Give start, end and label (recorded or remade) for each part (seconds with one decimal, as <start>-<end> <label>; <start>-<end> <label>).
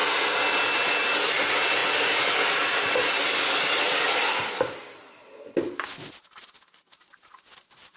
0.0-8.0 recorded